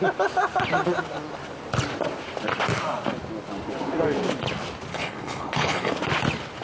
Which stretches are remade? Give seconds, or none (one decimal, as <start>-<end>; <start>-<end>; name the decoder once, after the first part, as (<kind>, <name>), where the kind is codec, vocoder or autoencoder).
4.9-5.9 (codec, HILCodec)